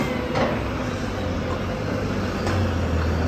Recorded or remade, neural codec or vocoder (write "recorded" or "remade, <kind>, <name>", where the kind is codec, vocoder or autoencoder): recorded